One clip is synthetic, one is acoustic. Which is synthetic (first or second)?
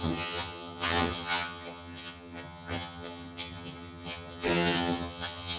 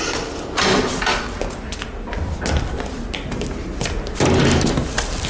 first